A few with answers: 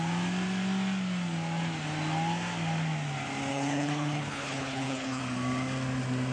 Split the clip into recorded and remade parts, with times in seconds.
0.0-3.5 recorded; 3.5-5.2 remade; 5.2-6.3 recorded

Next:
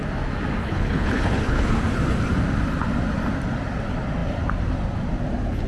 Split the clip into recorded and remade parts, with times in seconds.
0.0-0.6 recorded; 0.6-1.7 remade; 1.7-5.7 recorded

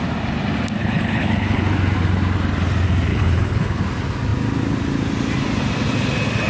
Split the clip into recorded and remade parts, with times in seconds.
0.0-0.8 recorded; 0.8-1.6 remade; 1.6-3.1 recorded; 3.1-3.8 remade; 3.8-6.5 recorded

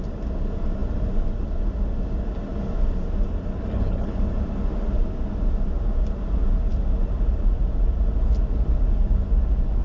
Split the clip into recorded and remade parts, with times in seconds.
0.0-3.5 recorded; 3.5-4.2 remade; 4.2-9.8 recorded

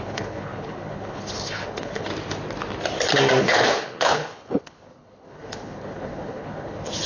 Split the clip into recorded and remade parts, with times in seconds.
0.0-2.1 remade; 2.1-3.4 recorded; 3.4-7.1 remade

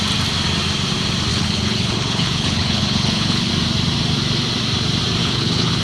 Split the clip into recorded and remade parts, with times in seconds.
0.0-1.3 recorded; 1.3-3.5 remade; 3.5-5.2 recorded; 5.2-5.8 remade

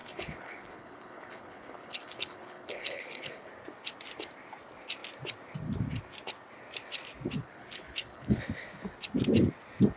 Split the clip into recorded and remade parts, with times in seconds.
0.0-3.5 remade; 3.5-7.4 recorded; 7.4-8.4 remade; 8.4-10.0 recorded

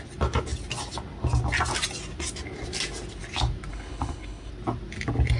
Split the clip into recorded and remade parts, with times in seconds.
0.0-3.7 recorded; 3.7-4.5 remade; 4.5-5.4 recorded